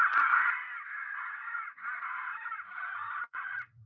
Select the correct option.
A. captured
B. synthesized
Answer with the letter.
B